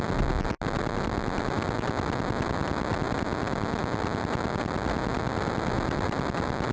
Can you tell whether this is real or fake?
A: real